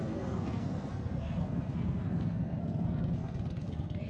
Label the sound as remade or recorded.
remade